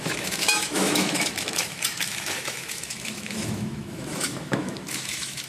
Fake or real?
fake